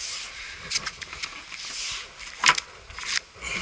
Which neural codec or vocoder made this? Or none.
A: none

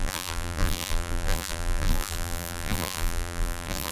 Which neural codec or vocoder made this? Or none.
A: vocoder, BigVGAN v2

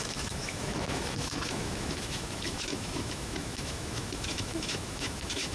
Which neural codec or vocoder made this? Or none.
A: autoencoder, DAC-VAE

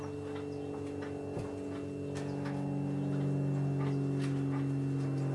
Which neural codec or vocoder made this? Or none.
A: none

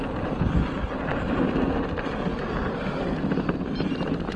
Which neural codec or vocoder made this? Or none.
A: none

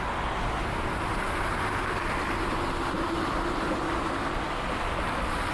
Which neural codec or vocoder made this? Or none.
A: none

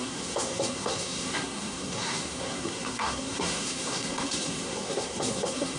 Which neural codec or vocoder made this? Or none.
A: codec, SNAC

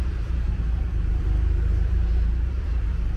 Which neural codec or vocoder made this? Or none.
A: vocoder, BigVGAN v2